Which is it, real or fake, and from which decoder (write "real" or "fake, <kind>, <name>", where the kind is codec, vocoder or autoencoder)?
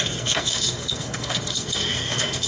fake, codec, SNAC